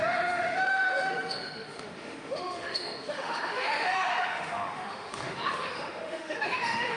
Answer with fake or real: fake